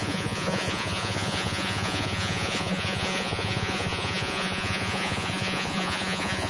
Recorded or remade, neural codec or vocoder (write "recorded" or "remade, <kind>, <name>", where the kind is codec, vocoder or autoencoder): remade, vocoder, Vocos